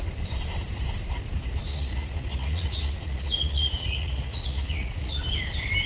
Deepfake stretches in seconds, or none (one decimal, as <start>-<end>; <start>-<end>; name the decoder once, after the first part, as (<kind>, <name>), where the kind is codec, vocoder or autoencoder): 1.7-5.2 (vocoder, Vocos)